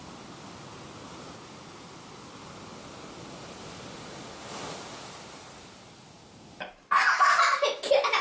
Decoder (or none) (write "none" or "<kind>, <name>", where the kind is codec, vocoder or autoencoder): none